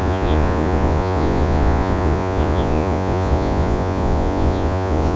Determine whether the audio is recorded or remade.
remade